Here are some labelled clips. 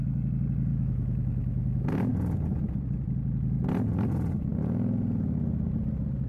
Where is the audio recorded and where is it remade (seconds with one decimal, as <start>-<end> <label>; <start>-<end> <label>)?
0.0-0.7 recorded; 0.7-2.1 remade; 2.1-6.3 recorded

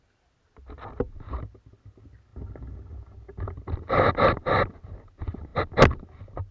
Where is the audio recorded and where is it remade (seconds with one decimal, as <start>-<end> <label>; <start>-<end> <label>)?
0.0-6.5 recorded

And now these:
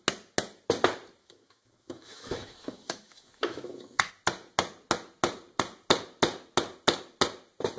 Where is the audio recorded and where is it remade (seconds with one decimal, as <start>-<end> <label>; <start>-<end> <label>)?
0.0-1.2 recorded; 1.2-4.1 remade; 4.1-7.8 recorded